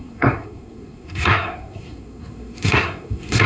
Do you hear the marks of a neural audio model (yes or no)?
yes